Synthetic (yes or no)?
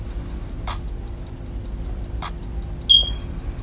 no